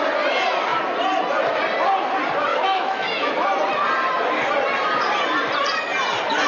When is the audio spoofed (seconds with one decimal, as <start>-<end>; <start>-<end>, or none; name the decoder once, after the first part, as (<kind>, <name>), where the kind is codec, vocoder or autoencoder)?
2.5-3.3 (autoencoder, DAC-VAE)